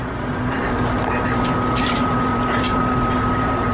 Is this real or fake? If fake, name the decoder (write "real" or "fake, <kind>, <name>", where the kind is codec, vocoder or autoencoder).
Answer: fake, vocoder, BigVGAN v2